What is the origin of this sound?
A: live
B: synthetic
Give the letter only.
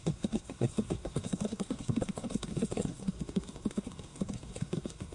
B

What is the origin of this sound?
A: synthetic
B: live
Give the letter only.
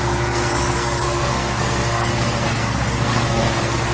A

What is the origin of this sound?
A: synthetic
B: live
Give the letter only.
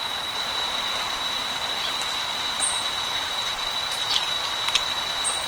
A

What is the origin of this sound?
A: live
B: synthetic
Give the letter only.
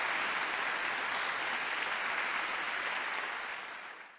A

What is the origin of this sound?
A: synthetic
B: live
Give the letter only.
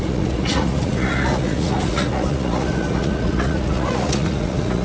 A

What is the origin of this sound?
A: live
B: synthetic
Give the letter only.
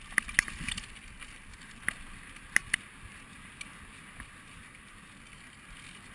A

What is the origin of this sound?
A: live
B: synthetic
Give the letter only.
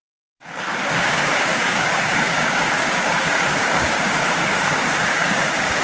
B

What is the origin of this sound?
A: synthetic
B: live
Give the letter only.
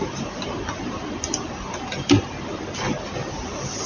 B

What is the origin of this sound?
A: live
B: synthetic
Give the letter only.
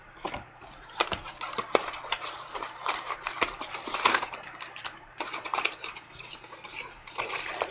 B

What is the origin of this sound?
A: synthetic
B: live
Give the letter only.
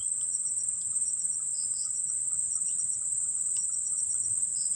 A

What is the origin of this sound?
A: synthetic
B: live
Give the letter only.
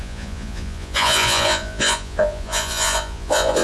A